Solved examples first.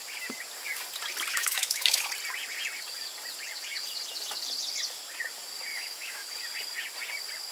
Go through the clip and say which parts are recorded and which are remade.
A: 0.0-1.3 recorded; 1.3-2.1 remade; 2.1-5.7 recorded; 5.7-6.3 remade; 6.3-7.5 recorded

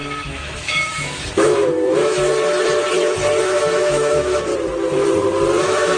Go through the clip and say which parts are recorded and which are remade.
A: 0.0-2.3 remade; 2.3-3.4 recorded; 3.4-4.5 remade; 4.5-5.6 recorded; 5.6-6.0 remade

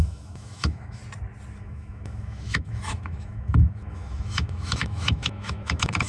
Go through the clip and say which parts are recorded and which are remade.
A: 0.0-1.0 remade; 1.0-1.6 recorded; 1.6-6.1 remade

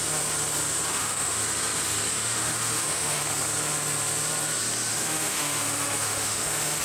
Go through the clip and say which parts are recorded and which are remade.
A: 0.0-0.9 recorded; 0.9-1.4 remade; 1.4-2.1 recorded; 2.1-3.2 remade; 3.2-4.9 recorded; 4.9-6.8 remade

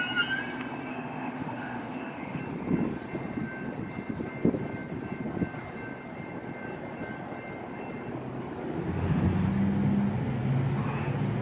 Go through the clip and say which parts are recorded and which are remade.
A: 0.0-0.9 recorded; 0.9-2.4 remade; 2.4-11.4 recorded

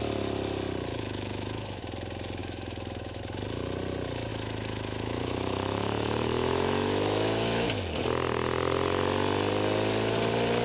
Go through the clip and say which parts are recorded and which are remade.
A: 0.0-0.9 recorded; 0.9-1.8 remade; 1.8-2.4 recorded; 2.4-3.2 remade; 3.2-4.3 recorded; 4.3-7.7 remade; 7.7-10.6 recorded

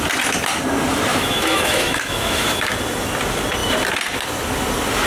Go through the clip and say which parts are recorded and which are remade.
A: 0.0-1.1 recorded; 1.1-2.7 remade; 2.7-5.1 recorded